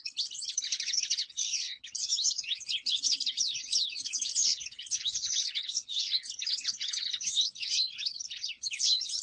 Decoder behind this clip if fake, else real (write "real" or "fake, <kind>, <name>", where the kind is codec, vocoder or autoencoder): fake, codec, HILCodec